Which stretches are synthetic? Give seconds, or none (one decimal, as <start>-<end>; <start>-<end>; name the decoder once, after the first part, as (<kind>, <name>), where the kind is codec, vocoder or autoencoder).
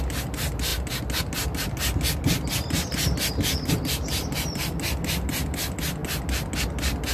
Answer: 0.0-0.7 (vocoder, BigVGAN v2); 3.7-6.0